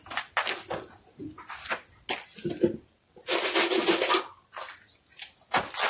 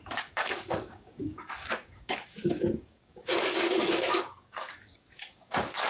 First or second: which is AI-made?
second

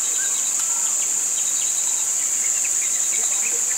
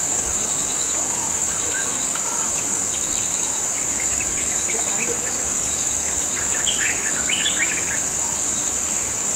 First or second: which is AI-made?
second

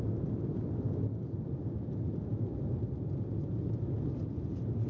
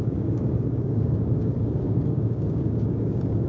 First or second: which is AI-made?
second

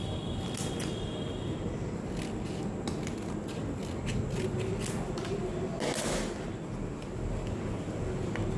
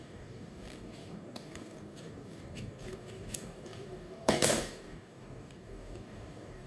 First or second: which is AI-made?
second